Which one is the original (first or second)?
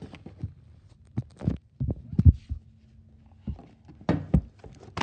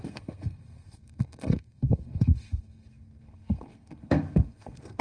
first